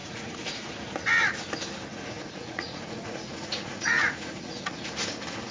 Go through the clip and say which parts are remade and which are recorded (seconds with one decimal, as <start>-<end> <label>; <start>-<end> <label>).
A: 0.0-0.9 remade; 0.9-1.9 recorded; 1.9-4.9 remade; 4.9-5.5 recorded